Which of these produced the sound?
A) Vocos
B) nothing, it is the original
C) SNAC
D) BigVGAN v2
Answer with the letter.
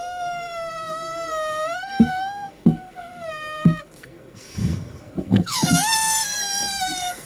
C